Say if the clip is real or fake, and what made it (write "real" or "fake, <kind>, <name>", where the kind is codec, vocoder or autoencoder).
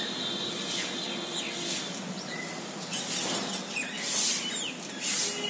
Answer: real